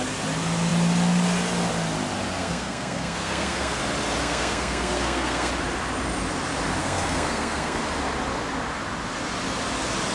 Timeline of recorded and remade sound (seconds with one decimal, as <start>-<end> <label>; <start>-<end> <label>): 0.0-2.4 recorded; 2.4-3.8 remade; 3.8-4.2 recorded; 4.2-5.5 remade; 5.5-6.8 recorded; 6.8-7.8 remade; 7.8-10.1 recorded